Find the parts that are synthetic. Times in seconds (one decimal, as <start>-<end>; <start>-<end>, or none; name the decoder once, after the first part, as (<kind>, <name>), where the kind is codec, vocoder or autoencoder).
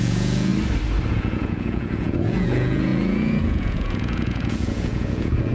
0.0-0.5 (vocoder, Vocos); 1.1-5.5